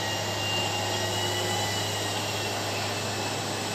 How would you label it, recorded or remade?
recorded